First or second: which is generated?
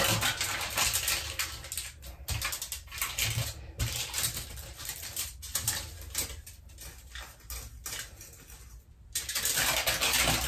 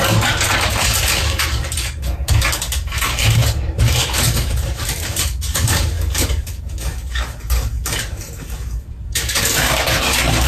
second